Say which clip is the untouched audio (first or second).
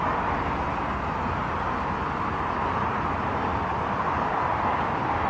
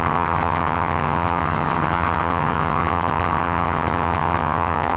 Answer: first